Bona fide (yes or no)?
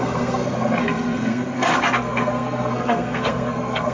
no